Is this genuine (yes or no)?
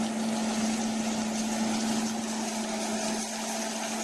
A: yes